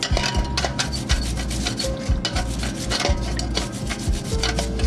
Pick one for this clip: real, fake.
real